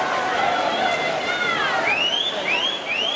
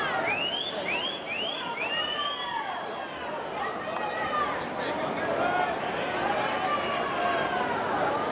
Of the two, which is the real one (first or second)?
second